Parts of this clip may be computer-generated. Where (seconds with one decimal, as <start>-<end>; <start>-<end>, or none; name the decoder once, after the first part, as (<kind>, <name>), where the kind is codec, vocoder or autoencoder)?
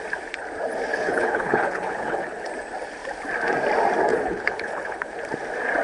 0.9-2.5 (codec, HILCodec); 4.1-5.1